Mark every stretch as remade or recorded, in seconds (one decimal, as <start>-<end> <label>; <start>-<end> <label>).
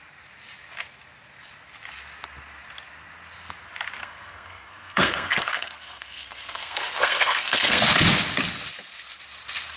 0.0-4.0 recorded; 4.0-7.8 remade; 7.8-9.8 recorded